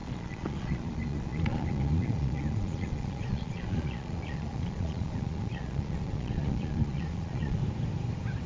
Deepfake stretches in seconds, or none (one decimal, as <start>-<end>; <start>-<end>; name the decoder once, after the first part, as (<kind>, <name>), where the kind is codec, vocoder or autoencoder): 0.0-7.6 (vocoder, Vocos)